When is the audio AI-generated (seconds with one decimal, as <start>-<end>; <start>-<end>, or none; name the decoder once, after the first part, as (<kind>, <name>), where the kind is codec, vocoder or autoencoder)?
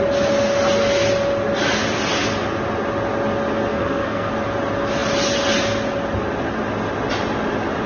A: 3.7-4.3 (codec, SNAC)